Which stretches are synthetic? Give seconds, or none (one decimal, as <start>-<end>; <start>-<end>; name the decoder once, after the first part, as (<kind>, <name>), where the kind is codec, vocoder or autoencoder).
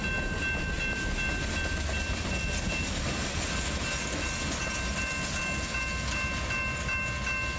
none